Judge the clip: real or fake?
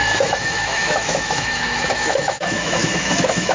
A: fake